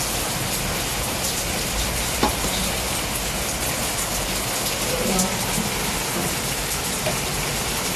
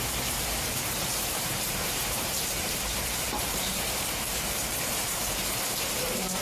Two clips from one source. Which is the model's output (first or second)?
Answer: second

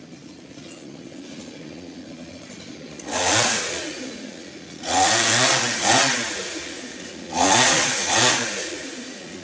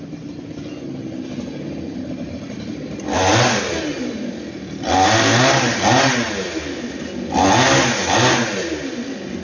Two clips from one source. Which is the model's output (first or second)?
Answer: first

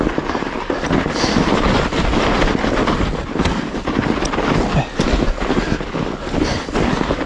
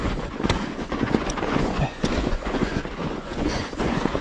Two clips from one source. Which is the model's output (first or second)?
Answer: second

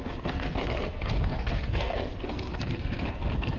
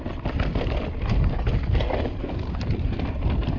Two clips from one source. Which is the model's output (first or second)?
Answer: first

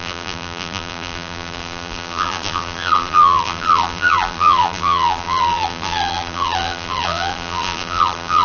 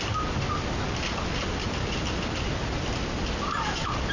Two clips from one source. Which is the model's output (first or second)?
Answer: first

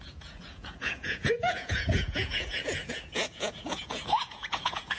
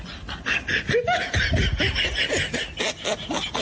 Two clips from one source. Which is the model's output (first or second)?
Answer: first